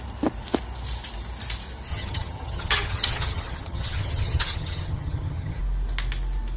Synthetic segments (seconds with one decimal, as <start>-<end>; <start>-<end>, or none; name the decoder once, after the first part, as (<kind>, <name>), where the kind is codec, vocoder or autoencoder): 1.9-5.6 (vocoder, HiFi-GAN)